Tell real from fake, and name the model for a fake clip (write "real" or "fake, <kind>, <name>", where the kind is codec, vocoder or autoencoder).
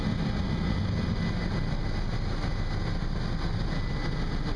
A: real